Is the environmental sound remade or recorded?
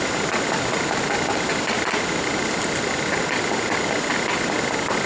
recorded